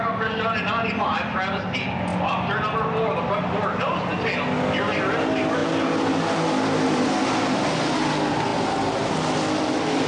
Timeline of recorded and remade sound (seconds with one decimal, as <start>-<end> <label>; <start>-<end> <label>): 0.0-10.1 recorded